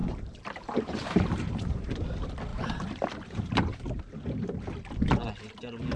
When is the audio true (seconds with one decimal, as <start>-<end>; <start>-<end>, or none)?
1.9-2.5; 4.0-6.0